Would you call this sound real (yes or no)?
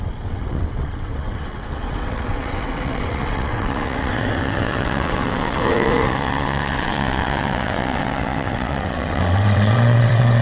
no